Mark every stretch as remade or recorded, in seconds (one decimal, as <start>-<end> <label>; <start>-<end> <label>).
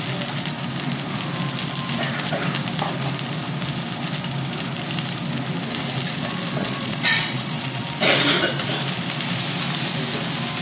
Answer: 0.0-6.6 recorded; 6.6-7.8 remade; 7.8-10.6 recorded